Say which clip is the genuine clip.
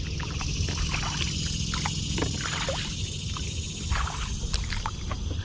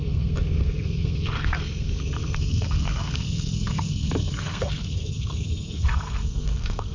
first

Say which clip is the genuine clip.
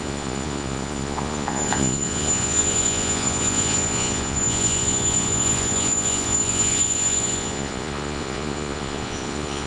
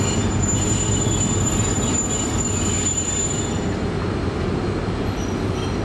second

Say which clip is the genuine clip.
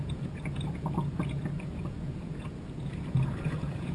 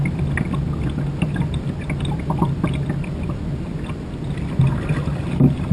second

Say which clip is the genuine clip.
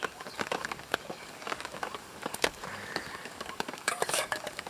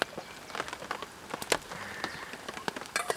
second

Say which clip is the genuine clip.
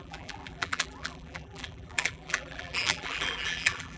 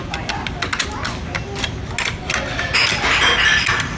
second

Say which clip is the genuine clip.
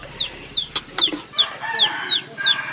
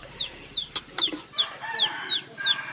first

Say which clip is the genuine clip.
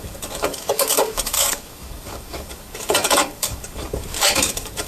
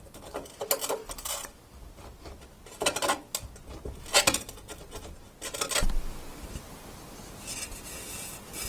second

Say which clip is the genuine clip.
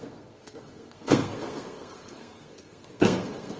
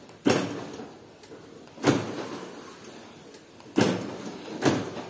second